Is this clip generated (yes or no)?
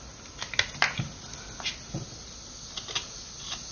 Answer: no